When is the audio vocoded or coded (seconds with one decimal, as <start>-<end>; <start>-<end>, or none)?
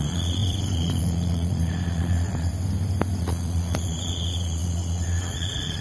0.0-2.5; 3.2-5.8